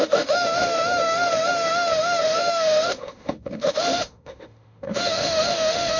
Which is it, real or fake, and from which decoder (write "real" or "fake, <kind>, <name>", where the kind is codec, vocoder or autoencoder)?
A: fake, autoencoder, DAC-VAE